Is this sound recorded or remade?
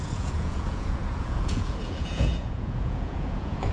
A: remade